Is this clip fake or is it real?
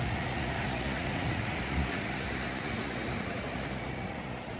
fake